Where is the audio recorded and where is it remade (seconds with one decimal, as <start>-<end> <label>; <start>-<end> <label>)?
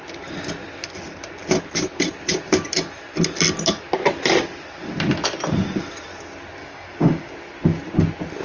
0.0-6.6 recorded; 6.6-7.3 remade; 7.3-8.4 recorded